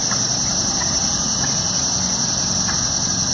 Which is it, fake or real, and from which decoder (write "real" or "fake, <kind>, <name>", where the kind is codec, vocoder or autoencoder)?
real